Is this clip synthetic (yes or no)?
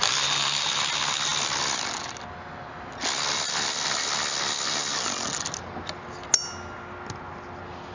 no